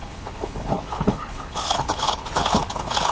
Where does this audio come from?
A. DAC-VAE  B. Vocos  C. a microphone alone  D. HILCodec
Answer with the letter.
D